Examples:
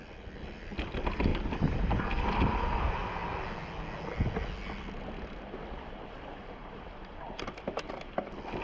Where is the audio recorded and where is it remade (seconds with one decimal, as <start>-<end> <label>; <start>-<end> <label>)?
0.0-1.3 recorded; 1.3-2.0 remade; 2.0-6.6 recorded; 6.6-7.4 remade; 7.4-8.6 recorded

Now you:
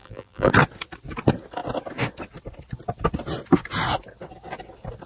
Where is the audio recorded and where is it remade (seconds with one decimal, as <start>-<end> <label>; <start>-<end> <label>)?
0.0-0.5 remade; 0.5-5.1 recorded

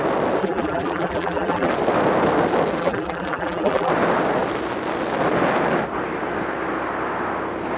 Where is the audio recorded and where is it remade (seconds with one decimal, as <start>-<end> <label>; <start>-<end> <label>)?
0.0-0.4 recorded; 0.4-1.7 remade; 1.7-2.8 recorded; 2.8-3.9 remade; 3.9-7.8 recorded